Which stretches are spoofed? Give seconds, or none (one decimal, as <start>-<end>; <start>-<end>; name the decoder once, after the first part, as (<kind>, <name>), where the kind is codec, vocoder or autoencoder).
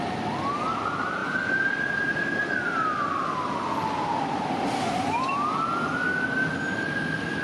none